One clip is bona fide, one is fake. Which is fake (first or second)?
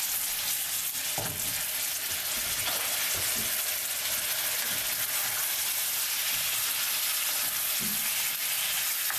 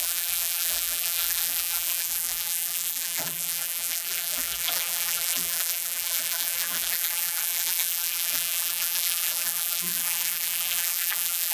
second